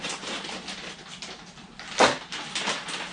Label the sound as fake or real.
real